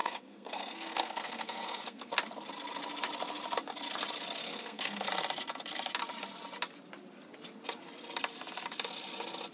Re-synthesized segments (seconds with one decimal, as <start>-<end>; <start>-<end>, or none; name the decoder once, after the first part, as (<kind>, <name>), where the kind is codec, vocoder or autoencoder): 0.0-2.1 (codec, SNAC); 4.4-5.1